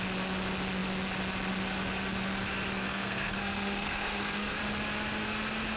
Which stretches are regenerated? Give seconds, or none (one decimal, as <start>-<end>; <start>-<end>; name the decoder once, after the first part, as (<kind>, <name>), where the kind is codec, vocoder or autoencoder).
2.8-4.6 (codec, SNAC)